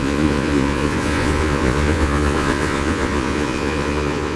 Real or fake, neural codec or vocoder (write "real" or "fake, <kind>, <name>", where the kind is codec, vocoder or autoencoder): fake, vocoder, Vocos